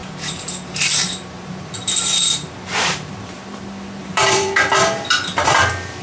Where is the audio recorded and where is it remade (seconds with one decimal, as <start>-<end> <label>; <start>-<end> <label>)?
0.0-3.6 remade; 3.6-4.0 recorded; 4.0-4.7 remade; 4.7-6.0 recorded